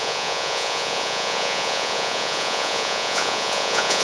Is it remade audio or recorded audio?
remade